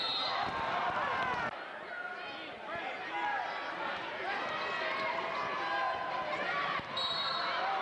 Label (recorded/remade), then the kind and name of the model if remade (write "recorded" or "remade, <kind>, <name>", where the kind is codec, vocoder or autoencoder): recorded